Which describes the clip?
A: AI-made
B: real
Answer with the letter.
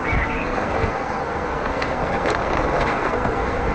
A